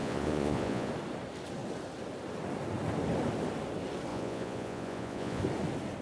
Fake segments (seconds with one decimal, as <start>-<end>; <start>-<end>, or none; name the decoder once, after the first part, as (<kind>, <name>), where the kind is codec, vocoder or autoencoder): 0.0-0.9 (vocoder, Vocos); 4.1-5.4